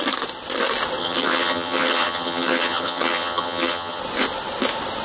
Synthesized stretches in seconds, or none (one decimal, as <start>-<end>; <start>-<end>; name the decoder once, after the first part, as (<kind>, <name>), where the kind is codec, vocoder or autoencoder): 1.0-4.0 (vocoder, HiFi-GAN)